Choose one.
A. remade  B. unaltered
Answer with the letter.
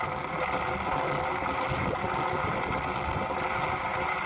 B